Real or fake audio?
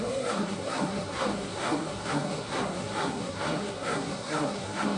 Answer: fake